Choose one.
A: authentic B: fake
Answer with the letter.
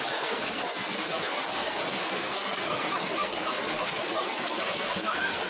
B